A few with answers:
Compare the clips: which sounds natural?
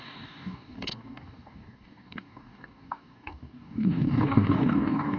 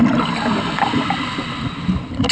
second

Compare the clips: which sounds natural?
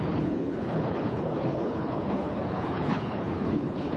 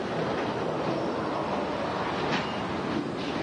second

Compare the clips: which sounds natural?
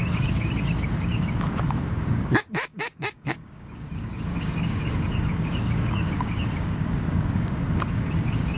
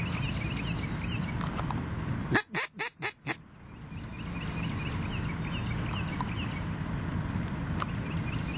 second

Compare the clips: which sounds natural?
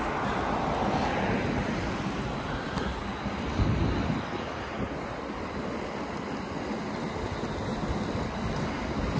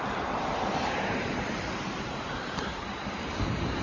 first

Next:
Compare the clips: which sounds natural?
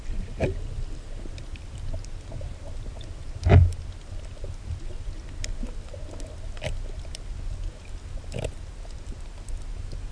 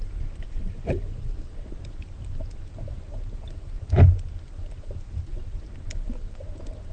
first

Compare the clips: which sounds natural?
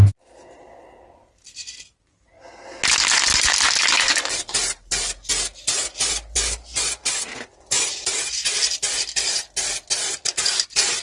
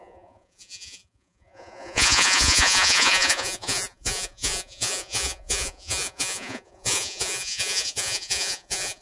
first